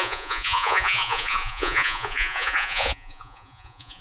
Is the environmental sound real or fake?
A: fake